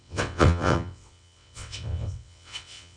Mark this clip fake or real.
fake